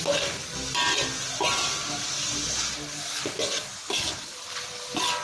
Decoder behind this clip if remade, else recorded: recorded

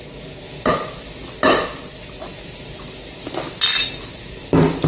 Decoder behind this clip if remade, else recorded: recorded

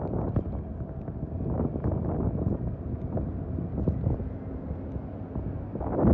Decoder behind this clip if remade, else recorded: recorded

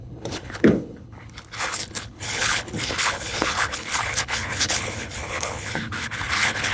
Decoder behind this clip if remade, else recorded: remade, codec, HILCodec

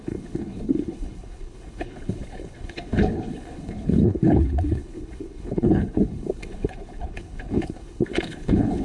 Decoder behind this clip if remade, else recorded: remade, codec, HILCodec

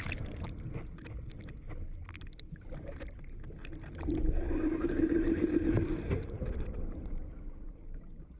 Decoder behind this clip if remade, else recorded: recorded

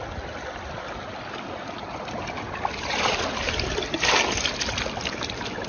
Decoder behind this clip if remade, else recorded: recorded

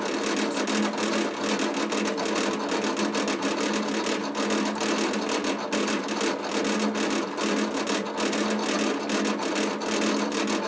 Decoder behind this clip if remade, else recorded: recorded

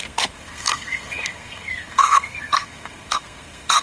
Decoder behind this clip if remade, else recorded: remade, codec, SNAC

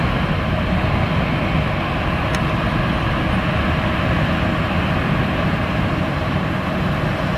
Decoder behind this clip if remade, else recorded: recorded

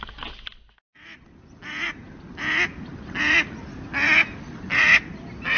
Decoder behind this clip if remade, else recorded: recorded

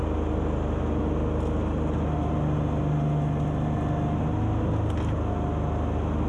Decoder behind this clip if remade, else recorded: recorded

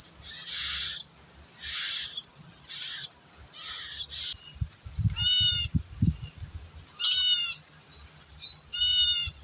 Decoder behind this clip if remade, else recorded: recorded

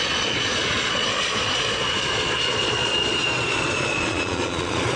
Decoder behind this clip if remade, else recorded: remade, vocoder, Vocos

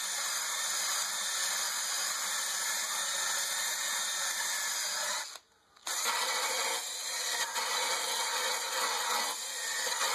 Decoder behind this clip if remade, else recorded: recorded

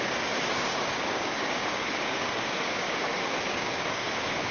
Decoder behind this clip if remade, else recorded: remade, codec, DAC